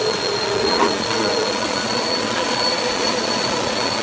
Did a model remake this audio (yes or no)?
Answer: yes